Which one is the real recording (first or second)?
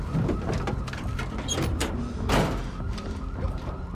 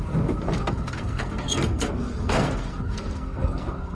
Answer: first